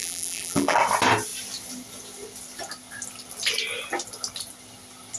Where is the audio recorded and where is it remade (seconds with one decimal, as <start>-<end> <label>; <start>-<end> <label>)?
0.0-0.8 remade; 0.8-5.2 recorded